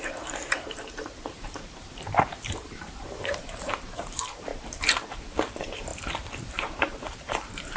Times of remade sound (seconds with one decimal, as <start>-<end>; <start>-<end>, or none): 0.0-4.5; 5.5-5.9; 6.5-7.8